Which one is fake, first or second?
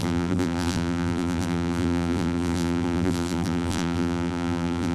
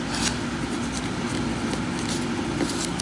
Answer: first